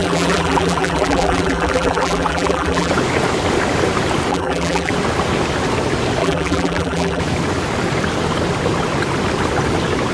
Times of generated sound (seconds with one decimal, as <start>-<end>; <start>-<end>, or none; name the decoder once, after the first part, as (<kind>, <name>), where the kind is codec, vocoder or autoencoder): 0.0-2.9 (vocoder, BigVGAN v2); 4.3-4.9; 6.2-7.2